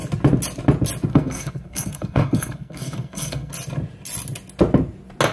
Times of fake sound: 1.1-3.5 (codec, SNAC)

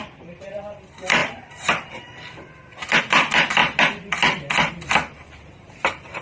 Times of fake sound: none

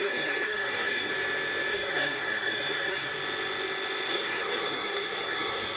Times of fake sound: 0.0-1.1 (codec, SNAC); 1.7-3.1; 4.1-5.8

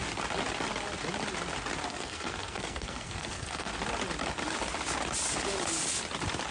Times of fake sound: 1.9-3.7 (codec, SNAC)

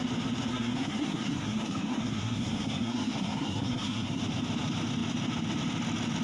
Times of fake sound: 0.5-4.2 (codec, SNAC)